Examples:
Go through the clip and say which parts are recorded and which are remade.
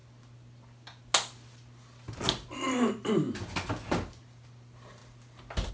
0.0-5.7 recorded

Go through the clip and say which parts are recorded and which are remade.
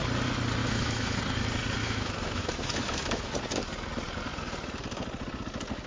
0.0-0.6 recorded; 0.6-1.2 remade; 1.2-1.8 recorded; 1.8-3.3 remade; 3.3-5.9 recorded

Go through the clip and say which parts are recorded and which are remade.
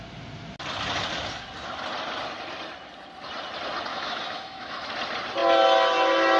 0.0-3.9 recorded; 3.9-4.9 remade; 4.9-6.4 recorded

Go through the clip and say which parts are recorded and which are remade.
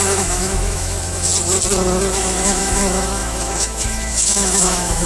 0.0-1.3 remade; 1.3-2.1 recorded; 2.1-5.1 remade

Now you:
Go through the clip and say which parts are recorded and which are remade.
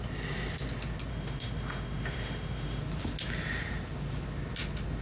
0.0-1.1 recorded; 1.1-2.8 remade; 2.8-5.0 recorded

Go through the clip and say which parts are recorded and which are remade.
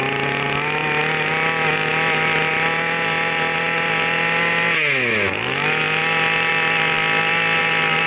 0.0-8.1 recorded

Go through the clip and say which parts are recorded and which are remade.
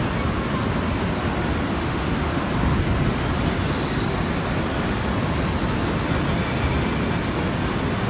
0.0-1.7 recorded; 1.7-2.5 remade; 2.5-8.1 recorded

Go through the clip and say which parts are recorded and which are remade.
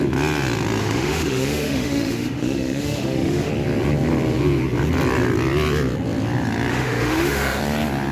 0.0-0.8 recorded; 0.8-3.5 remade; 3.5-6.7 recorded; 6.7-7.6 remade; 7.6-8.1 recorded